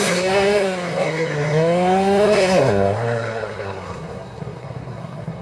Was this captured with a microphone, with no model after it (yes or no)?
no